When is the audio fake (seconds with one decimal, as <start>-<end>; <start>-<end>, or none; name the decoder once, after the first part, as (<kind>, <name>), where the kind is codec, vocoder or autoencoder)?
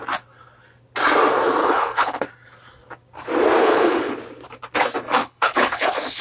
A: 1.6-2.2 (codec, HILCodec); 3.6-4.2; 5.2-6.2